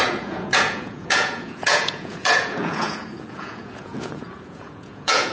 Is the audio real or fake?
fake